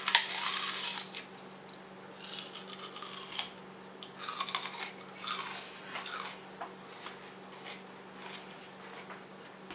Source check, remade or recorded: recorded